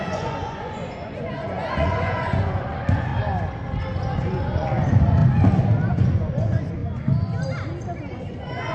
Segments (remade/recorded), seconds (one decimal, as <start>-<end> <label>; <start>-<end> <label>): 0.0-3.1 remade; 3.1-4.0 recorded; 4.0-5.2 remade; 5.2-5.9 recorded; 5.9-6.8 remade; 6.8-8.1 recorded; 8.1-8.7 remade